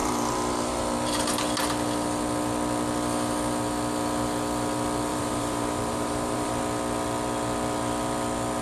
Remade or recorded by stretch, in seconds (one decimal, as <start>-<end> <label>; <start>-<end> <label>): 0.0-1.2 remade; 1.2-5.1 recorded; 5.1-6.6 remade; 6.6-8.6 recorded